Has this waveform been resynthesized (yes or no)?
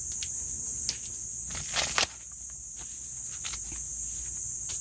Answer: no